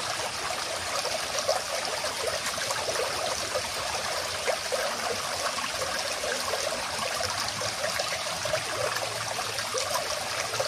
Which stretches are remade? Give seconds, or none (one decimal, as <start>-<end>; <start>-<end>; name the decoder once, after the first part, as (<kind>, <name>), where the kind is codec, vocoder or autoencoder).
none